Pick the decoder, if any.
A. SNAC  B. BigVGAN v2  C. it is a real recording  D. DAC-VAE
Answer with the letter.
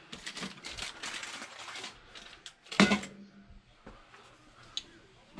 C